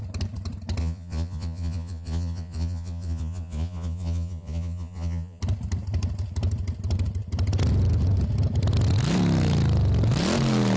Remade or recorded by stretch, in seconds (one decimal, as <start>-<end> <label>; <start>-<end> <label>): 0.0-0.8 recorded; 0.8-5.4 remade; 5.4-10.8 recorded